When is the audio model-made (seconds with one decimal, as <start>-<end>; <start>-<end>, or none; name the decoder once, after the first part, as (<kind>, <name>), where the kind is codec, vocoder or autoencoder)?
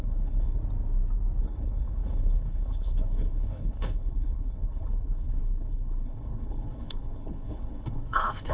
0.0-0.6 (codec, HILCodec); 1.4-8.5